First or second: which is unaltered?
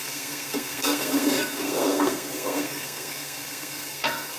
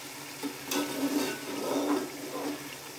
second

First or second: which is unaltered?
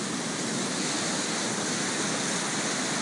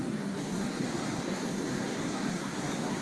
first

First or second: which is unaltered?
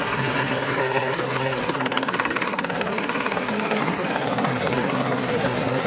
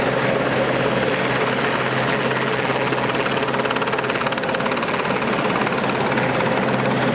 second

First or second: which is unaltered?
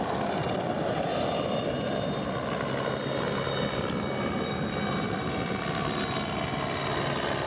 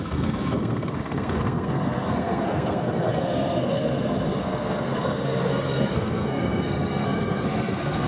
first